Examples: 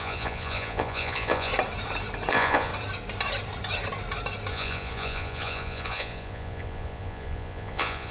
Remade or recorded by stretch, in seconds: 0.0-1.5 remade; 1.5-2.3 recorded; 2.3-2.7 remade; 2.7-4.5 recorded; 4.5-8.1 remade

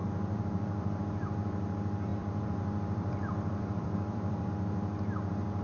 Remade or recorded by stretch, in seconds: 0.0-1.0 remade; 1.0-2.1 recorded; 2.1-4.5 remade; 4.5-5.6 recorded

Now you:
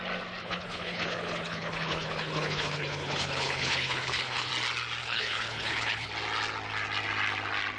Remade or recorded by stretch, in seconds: 0.0-0.4 recorded; 0.4-4.5 remade; 4.5-5.0 recorded; 5.0-6.1 remade; 6.1-7.8 recorded